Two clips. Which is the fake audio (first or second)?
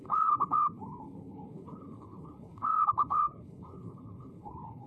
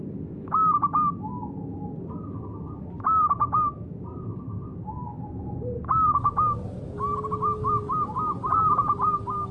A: first